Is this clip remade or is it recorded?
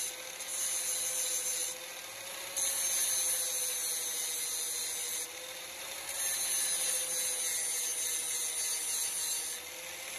recorded